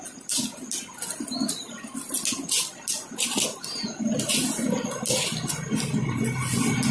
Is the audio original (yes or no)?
yes